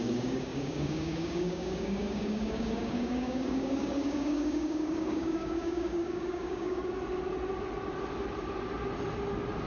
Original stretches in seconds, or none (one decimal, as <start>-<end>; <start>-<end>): 6.8-9.7